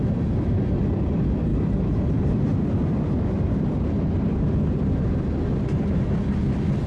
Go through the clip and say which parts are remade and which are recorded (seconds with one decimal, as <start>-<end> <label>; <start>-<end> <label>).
0.0-1.5 recorded; 1.5-2.1 remade; 2.1-6.9 recorded